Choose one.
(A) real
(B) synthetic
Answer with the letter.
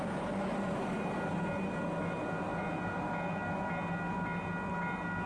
A